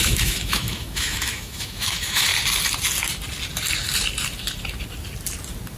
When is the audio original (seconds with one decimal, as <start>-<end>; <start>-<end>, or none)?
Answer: 2.3-5.8